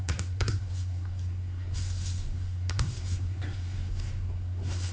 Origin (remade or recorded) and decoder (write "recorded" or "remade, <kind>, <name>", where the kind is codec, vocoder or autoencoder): remade, codec, SNAC